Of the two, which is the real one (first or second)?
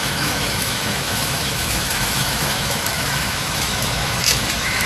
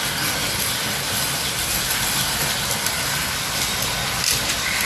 second